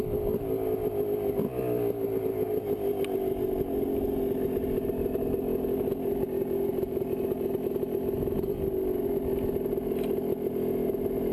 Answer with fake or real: real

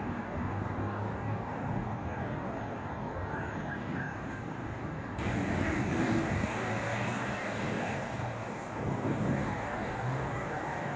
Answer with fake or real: fake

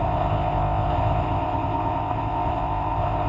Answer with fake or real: fake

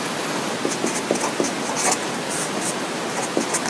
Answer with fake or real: real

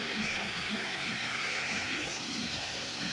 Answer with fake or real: fake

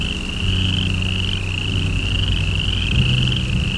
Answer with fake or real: real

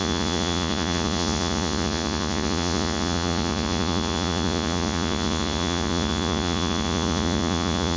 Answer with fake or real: fake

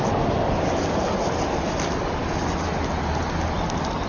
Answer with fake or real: real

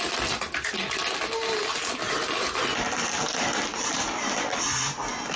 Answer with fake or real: real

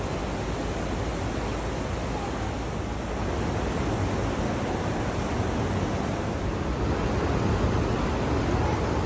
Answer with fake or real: real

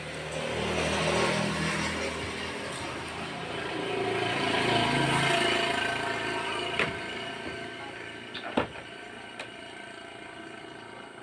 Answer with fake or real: real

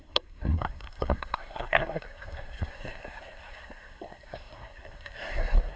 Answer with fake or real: fake